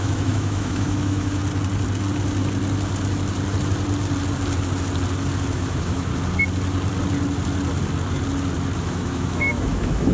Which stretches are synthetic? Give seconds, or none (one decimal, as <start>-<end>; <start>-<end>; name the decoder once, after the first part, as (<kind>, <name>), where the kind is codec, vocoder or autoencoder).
0.0-1.4 (autoencoder, DAC-VAE); 5.5-6.1; 8.8-10.1